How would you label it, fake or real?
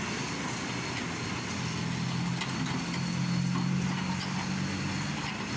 real